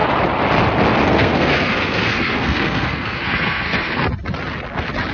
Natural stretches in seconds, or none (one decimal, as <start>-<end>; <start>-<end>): 0.0-1.1; 4.0-5.1